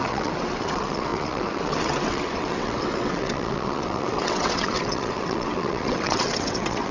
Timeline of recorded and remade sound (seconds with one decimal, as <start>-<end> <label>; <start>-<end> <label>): 0.0-6.9 remade